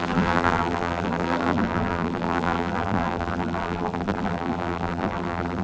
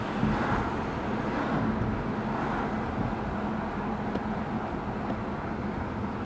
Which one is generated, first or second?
first